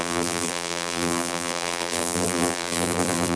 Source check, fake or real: fake